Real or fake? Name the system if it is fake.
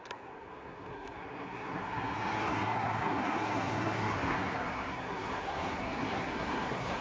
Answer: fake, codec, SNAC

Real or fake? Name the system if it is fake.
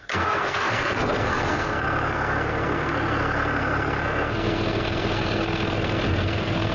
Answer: fake, codec, SNAC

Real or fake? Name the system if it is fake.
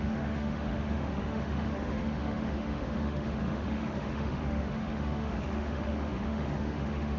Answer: fake, autoencoder, DAC-VAE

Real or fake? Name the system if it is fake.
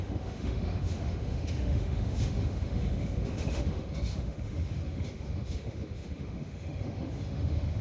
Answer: fake, autoencoder, DAC-VAE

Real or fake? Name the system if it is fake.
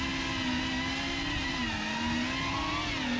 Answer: real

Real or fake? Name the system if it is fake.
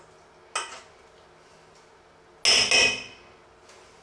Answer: real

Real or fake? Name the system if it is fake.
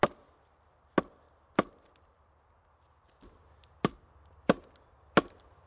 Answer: real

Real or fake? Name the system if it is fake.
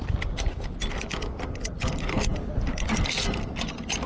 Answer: real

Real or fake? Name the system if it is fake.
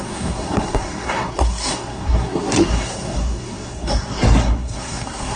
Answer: fake, codec, SNAC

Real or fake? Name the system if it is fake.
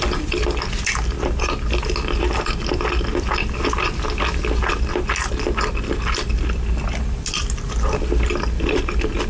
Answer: real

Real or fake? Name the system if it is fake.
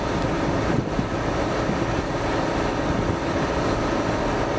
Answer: real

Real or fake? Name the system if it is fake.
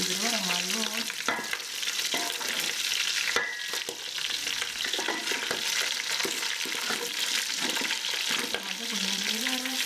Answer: real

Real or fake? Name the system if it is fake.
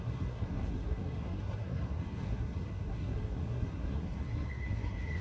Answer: fake, codec, SNAC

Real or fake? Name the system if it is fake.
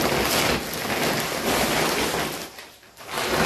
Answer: real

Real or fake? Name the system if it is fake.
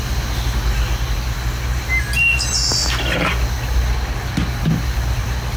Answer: real